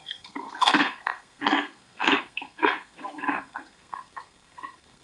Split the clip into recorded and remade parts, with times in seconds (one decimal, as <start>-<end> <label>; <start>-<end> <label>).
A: 0.0-5.0 remade